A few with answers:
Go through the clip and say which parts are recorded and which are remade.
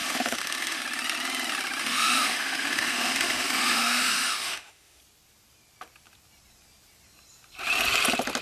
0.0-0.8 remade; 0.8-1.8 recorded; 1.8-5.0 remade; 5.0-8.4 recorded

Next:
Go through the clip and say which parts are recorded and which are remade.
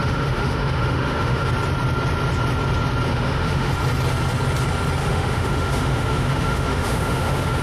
0.0-1.5 remade; 1.5-3.1 recorded; 3.1-3.7 remade; 3.7-5.0 recorded; 5.0-7.6 remade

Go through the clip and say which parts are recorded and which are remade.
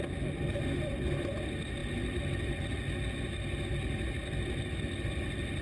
0.0-5.6 recorded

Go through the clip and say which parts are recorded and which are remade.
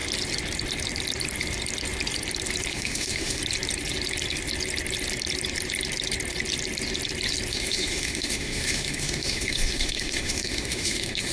0.0-2.7 recorded; 2.7-3.4 remade; 3.4-7.5 recorded; 7.5-11.3 remade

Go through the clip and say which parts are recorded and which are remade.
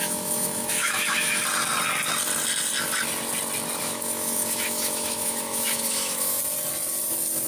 0.0-1.4 remade; 1.4-3.8 recorded; 3.8-6.4 remade; 6.4-7.5 recorded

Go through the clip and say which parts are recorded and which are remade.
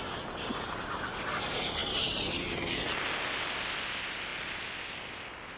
0.0-5.6 recorded